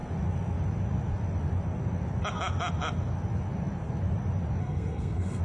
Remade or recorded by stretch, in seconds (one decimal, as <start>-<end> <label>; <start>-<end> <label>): 0.0-4.6 recorded; 4.6-5.4 remade